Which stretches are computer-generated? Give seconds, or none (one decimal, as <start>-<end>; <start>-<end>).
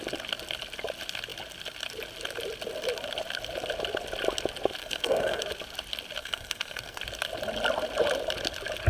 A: 4.8-5.4; 6.2-7.0